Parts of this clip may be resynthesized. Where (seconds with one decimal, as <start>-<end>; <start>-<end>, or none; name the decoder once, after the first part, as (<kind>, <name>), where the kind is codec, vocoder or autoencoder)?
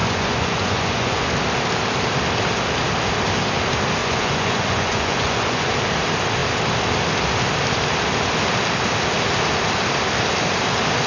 0.0-1.3 (vocoder, Vocos); 4.0-5.7